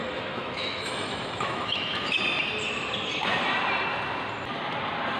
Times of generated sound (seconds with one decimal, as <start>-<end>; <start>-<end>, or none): 0.0-2.2

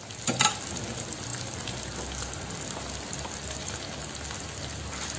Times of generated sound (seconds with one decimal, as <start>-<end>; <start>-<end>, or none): none

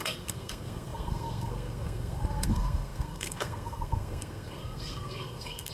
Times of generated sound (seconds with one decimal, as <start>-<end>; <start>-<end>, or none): 0.0-5.7

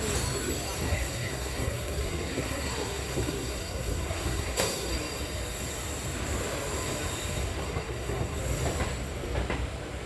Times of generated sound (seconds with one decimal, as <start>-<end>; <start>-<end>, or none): 0.9-4.9; 7.6-8.4

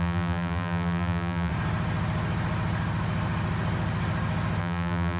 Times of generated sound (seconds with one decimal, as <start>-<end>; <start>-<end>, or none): 0.0-1.5; 4.6-5.2

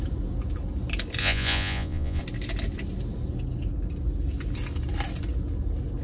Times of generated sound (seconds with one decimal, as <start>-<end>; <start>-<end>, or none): 1.2-2.2